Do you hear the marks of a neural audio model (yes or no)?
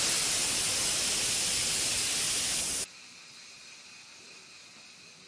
no